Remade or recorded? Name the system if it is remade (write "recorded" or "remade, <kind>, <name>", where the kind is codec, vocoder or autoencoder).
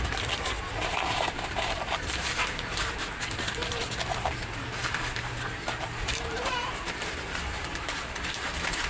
remade, vocoder, BigVGAN v2